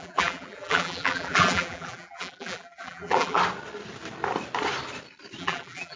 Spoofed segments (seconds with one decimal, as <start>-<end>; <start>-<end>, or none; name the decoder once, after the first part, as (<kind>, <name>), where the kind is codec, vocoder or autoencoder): 0.0-3.4 (vocoder, BigVGAN v2); 5.4-6.0